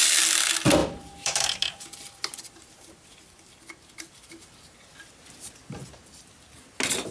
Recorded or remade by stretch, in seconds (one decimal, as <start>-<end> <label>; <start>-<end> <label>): 0.0-0.8 recorded; 0.8-4.3 remade; 4.3-7.1 recorded